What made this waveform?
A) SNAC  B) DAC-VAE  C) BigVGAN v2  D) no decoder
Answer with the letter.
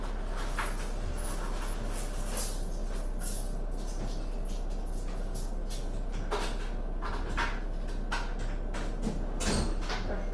D